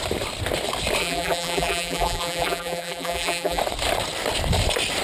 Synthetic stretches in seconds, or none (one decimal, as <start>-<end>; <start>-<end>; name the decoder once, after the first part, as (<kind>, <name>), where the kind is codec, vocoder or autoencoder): 1.0-3.6 (vocoder, BigVGAN v2)